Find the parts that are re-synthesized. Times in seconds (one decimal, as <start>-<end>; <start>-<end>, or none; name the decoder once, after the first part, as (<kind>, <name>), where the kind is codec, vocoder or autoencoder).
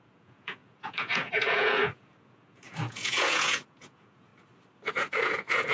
0.0-4.3 (vocoder, Vocos); 4.9-5.7